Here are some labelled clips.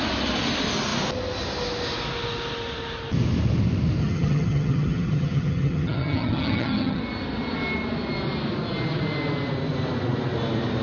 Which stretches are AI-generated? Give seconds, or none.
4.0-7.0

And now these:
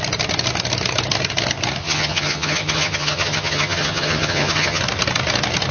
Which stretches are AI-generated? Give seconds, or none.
1.8-4.8

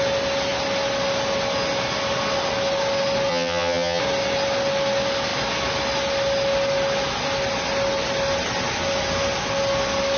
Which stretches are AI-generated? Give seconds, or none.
3.3-4.0

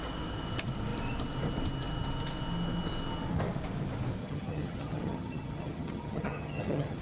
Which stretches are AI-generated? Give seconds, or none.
4.2-7.0

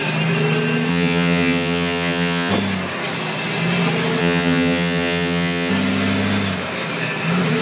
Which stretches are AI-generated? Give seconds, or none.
0.9-2.5; 4.2-5.7